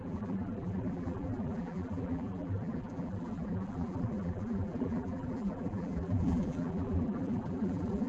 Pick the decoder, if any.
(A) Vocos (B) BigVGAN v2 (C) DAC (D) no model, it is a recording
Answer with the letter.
B